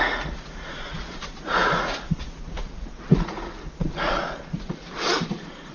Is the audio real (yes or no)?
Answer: no